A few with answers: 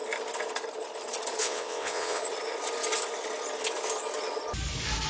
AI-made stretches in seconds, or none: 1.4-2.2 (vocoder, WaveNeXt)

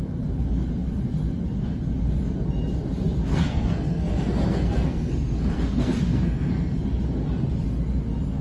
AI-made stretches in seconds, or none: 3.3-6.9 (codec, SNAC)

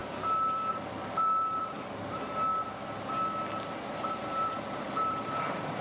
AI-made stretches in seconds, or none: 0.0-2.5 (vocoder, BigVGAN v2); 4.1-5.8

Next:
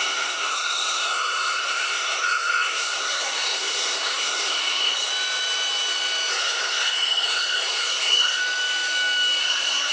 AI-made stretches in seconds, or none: 0.0-5.1 (codec, SNAC); 6.3-8.4; 9.4-9.9